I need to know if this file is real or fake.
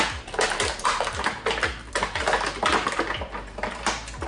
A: real